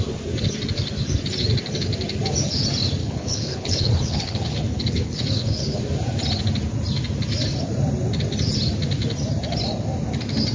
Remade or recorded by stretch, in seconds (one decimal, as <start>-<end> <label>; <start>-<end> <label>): 0.0-3.0 recorded; 3.0-5.8 remade; 5.8-10.5 recorded